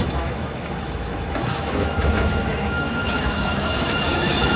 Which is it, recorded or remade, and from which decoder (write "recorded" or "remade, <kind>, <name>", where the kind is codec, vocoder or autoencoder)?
remade, autoencoder, DAC-VAE